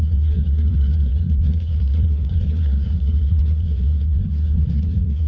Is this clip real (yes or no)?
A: no